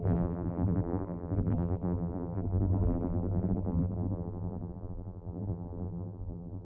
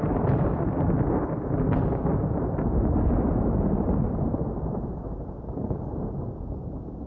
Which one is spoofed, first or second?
first